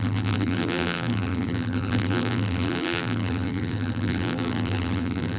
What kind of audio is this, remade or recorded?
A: remade